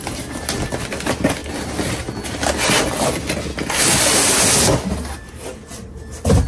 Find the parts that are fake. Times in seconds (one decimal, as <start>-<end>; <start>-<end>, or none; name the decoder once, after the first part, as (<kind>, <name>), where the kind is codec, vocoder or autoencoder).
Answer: none

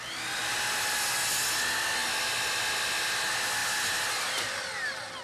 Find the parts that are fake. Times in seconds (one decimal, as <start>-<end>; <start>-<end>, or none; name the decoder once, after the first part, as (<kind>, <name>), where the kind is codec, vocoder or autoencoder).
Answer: none